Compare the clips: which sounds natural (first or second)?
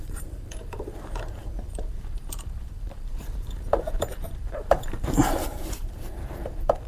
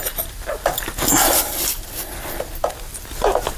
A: second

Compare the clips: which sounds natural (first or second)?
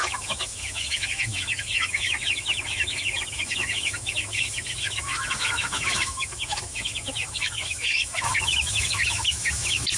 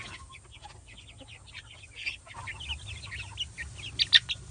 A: second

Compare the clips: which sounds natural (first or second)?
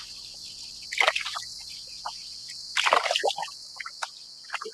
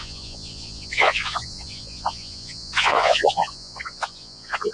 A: first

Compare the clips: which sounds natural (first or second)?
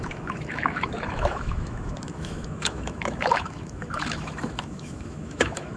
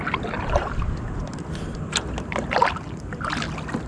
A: second